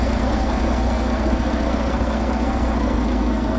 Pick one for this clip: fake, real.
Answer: fake